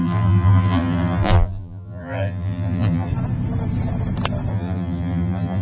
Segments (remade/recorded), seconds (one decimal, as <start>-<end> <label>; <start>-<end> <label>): 0.0-3.1 remade; 3.1-4.5 recorded; 4.5-5.6 remade